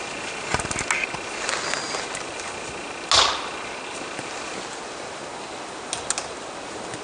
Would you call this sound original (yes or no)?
yes